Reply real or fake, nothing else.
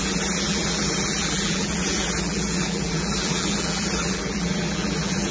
fake